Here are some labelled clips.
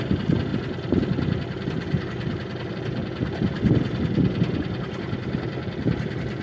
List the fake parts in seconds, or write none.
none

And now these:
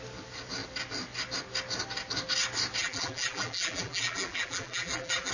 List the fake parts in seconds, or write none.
2.8-5.3 (vocoder, BigVGAN v2)

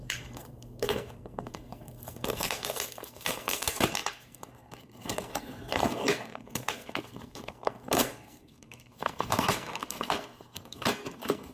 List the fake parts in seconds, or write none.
0.0-11.5 (codec, SNAC)

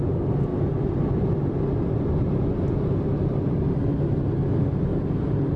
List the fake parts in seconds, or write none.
4.9-5.6 (vocoder, BigVGAN v2)

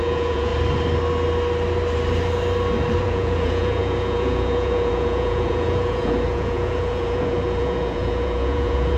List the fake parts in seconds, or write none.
0.0-0.5 (vocoder, Vocos); 3.0-9.0

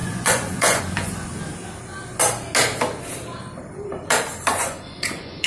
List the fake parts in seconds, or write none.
0.0-1.3 (vocoder, Vocos); 4.5-5.5

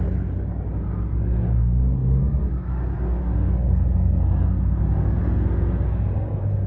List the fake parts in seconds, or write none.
none

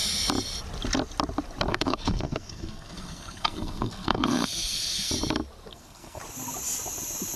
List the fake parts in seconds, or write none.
1.7-5.1 (codec, SNAC); 5.7-6.2